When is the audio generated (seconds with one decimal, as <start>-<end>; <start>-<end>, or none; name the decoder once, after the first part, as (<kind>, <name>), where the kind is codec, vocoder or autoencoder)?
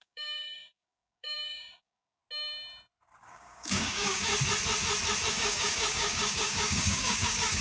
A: 0.0-2.2 (codec, DAC); 3.2-4.3; 5.3-7.6